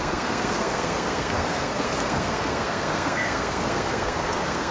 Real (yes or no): no